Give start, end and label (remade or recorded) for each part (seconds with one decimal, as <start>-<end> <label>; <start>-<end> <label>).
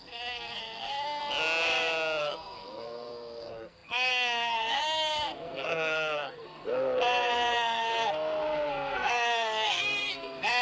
0.0-1.2 remade; 1.2-2.2 recorded; 2.2-10.6 remade